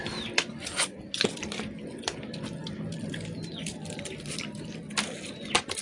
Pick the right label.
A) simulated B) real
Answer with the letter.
A